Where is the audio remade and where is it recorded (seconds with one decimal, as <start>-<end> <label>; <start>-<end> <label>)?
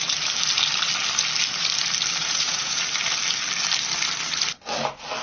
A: 0.0-2.2 recorded; 2.2-2.8 remade; 2.8-5.2 recorded